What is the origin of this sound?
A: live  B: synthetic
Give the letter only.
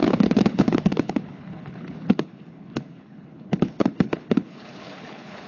B